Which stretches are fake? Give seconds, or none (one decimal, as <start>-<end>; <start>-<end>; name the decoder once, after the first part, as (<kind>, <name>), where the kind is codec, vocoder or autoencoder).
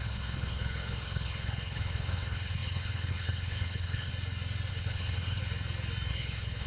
0.0-4.1 (codec, HILCodec); 4.7-5.4; 6.1-6.7